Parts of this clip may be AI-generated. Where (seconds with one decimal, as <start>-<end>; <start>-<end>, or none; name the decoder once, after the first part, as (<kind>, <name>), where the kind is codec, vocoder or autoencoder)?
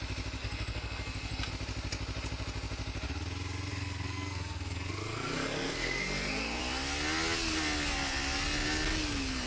0.4-1.5 (codec, SNAC); 3.7-6.6